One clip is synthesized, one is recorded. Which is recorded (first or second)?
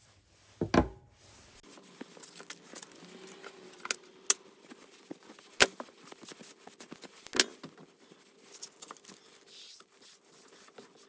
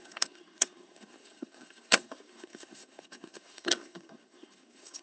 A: first